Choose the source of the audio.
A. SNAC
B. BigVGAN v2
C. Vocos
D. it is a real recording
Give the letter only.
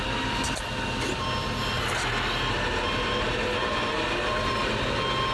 D